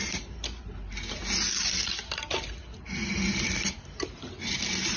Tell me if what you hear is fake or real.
real